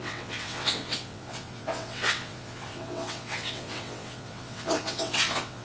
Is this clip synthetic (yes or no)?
yes